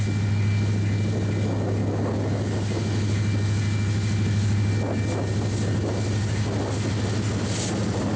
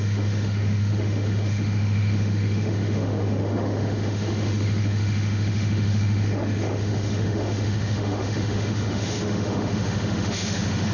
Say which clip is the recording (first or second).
first